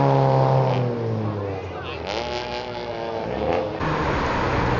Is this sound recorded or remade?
recorded